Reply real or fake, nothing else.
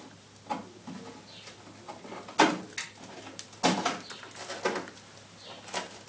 real